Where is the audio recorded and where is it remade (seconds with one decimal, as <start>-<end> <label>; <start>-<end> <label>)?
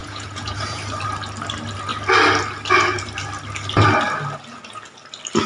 0.0-0.8 remade; 0.8-5.5 recorded